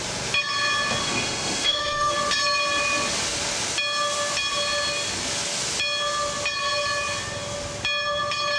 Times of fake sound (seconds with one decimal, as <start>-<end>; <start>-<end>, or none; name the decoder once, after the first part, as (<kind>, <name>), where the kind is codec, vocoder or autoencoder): 1.0-2.1 (autoencoder, DAC-VAE)